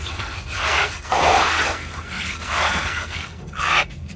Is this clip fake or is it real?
fake